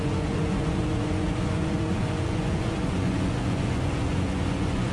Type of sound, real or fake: fake